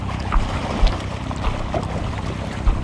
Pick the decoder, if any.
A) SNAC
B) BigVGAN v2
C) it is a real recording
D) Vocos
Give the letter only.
C